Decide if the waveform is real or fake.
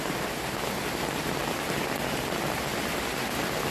real